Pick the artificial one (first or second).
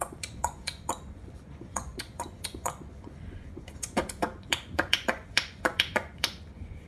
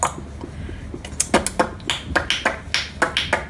first